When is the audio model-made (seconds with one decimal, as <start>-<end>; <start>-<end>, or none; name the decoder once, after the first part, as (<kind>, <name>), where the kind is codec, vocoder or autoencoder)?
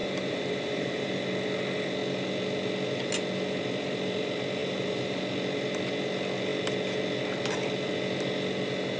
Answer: 0.0-1.1 (vocoder, BigVGAN v2); 4.6-5.2